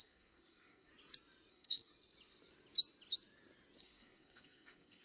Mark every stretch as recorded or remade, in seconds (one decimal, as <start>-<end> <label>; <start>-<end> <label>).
0.0-0.9 remade; 0.9-1.5 recorded; 1.5-1.9 remade; 1.9-3.8 recorded; 3.8-5.0 remade